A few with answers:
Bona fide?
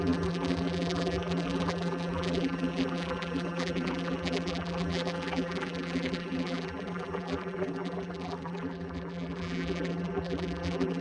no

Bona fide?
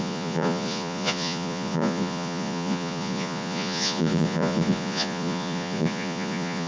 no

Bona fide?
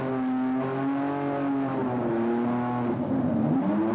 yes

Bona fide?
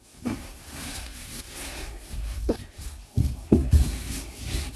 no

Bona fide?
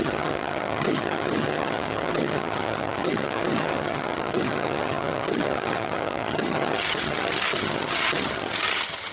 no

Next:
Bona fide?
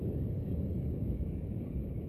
no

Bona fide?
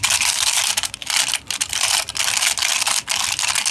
yes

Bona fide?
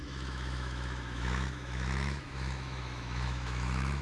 no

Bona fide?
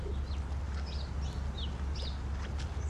yes